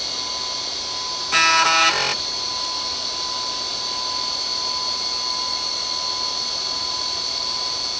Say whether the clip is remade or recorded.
recorded